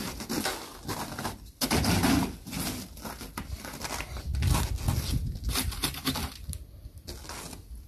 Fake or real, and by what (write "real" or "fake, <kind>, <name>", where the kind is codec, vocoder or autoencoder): real